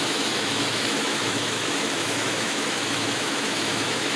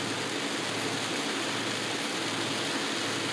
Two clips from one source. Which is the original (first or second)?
second